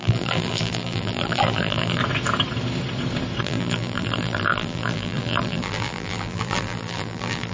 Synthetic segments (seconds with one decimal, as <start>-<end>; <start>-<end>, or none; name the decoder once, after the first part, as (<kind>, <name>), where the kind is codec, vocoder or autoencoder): 0.0-2.0 (vocoder, BigVGAN v2); 3.4-7.5